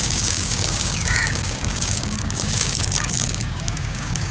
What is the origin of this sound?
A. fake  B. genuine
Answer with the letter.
A